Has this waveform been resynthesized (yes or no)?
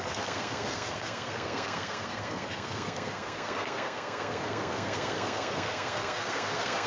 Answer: yes